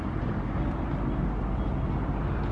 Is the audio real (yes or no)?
yes